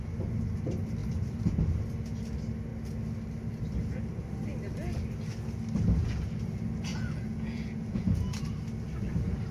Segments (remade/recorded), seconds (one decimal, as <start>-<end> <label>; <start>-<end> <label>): 0.0-1.0 recorded; 1.0-1.6 remade; 1.6-6.9 recorded; 6.9-8.4 remade; 8.4-9.5 recorded